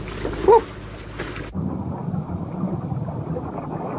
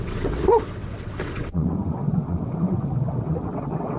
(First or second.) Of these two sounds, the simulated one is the second